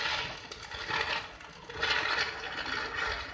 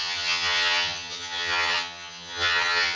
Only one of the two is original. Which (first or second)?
first